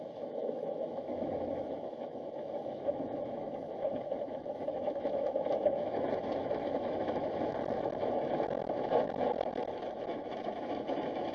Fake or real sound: fake